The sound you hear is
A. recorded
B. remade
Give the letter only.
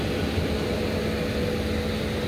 A